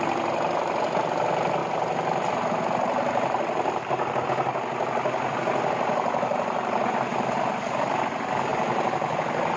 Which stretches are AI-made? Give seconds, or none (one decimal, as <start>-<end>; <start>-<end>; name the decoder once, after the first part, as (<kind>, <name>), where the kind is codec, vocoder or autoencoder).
none

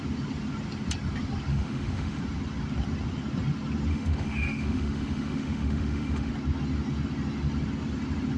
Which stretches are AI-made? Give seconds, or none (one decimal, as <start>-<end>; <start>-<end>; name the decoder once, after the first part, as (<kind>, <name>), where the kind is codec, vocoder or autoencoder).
1.5-2.2 (autoencoder, DAC-VAE); 3.9-6.3

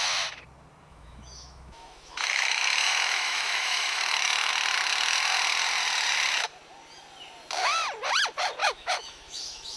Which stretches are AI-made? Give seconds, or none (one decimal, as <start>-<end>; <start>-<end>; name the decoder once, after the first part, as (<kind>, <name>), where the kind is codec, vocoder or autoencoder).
0.9-4.5 (autoencoder, DAC-VAE); 8.6-9.8

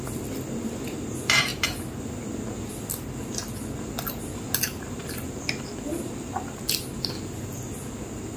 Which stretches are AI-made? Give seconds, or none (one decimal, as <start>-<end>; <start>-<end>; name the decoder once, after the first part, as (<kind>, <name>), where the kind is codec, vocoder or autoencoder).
none

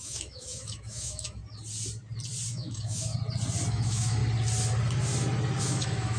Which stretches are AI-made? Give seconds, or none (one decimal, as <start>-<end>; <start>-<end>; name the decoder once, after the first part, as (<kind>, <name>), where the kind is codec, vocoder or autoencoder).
0.0-1.4 (autoencoder, DAC-VAE); 2.5-3.1; 3.7-4.2; 5.6-6.2

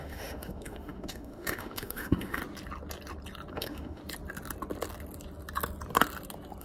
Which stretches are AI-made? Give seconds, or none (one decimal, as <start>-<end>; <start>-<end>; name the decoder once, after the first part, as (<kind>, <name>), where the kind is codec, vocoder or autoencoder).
0.0-2.4 (autoencoder, DAC-VAE); 3.5-4.0

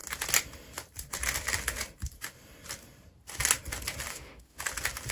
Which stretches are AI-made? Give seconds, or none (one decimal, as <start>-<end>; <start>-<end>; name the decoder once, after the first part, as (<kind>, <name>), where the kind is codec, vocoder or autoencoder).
4.1-4.6 (autoencoder, DAC-VAE)

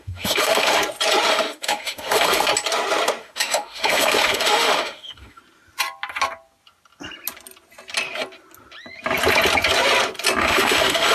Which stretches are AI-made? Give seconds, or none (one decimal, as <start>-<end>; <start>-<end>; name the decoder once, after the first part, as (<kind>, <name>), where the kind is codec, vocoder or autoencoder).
0.0-0.8 (autoencoder, DAC-VAE); 1.3-2.5; 3.2-5.4; 10.4-11.1